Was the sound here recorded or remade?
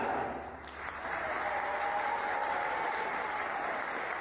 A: recorded